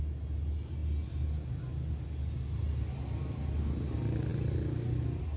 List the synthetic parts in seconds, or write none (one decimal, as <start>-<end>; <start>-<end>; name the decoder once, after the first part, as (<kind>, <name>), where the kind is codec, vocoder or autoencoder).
none

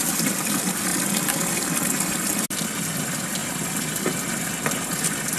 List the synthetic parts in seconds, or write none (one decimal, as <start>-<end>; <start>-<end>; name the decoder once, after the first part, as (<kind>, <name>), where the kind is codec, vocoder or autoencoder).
0.0-0.9 (vocoder, BigVGAN v2); 2.9-3.4

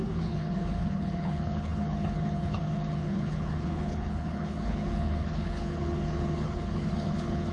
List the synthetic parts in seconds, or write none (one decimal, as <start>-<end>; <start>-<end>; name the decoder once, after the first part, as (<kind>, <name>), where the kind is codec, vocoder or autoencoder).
0.0-7.5 (codec, HILCodec)

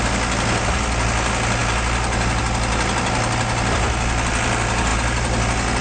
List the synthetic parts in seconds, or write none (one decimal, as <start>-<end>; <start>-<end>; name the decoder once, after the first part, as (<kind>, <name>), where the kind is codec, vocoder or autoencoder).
none

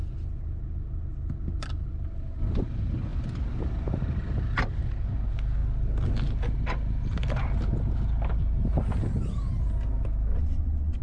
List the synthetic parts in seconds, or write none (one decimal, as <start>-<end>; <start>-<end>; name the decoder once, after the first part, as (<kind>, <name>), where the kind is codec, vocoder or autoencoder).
10.3-11.0 (vocoder, WaveNeXt)